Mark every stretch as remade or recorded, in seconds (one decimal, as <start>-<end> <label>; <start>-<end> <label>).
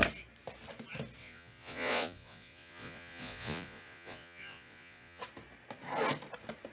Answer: 0.0-1.2 recorded; 1.2-5.2 remade; 5.2-6.7 recorded